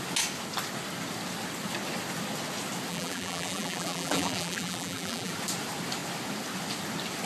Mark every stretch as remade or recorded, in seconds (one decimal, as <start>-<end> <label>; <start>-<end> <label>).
0.0-2.9 recorded; 2.9-5.3 remade; 5.3-7.3 recorded